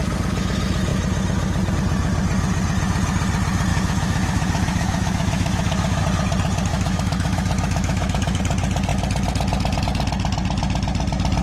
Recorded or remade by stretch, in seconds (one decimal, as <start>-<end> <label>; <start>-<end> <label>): 0.0-3.7 recorded; 3.7-6.0 remade; 6.0-6.7 recorded; 6.7-8.4 remade; 8.4-11.4 recorded